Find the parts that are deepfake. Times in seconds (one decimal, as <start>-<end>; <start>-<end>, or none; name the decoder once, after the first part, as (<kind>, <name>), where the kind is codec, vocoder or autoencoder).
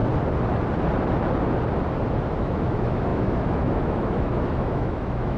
2.4-5.4 (autoencoder, DAC-VAE)